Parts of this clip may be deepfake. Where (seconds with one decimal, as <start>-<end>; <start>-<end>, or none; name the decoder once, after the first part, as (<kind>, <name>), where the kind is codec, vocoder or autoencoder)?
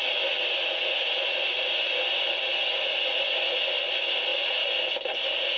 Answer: none